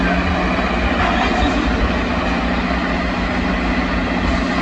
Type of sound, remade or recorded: recorded